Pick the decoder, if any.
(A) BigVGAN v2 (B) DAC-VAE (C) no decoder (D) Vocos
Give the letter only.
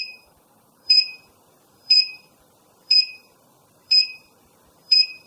A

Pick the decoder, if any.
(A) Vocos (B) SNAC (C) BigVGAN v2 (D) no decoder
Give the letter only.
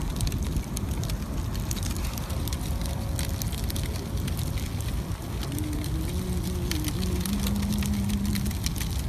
D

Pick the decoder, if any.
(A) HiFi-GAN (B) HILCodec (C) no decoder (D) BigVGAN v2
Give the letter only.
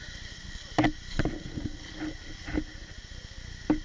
C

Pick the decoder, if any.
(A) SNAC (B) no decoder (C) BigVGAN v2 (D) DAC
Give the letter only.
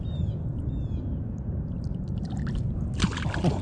B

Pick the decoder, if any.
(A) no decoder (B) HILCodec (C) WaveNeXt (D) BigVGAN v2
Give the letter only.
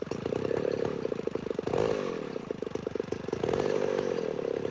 A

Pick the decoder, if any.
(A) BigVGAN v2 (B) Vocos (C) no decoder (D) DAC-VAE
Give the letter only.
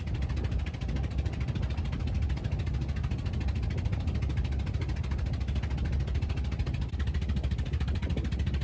C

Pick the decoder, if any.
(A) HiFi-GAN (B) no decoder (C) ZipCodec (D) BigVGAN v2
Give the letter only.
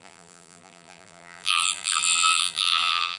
D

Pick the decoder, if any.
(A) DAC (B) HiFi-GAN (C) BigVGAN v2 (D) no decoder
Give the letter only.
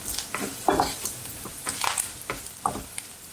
D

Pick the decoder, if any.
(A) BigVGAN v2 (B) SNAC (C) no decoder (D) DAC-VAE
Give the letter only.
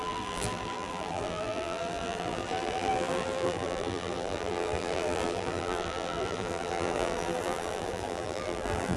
A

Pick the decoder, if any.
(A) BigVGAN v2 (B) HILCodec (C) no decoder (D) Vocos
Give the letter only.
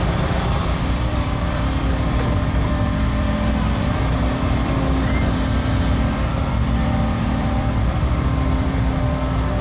A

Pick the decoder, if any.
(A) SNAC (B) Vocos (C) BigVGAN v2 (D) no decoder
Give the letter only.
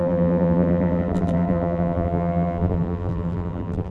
C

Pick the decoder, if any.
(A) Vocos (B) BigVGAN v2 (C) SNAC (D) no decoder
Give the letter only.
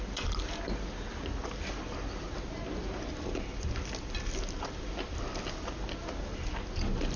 D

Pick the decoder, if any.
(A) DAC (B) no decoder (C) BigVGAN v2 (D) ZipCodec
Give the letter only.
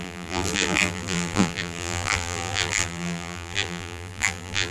C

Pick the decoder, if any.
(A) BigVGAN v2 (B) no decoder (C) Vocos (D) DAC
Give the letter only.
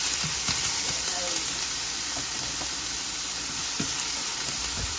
A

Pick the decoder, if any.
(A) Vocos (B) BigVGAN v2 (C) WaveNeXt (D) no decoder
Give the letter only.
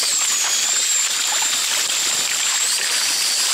D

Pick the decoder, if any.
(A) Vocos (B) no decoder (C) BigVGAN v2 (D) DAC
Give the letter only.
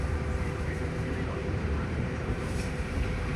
C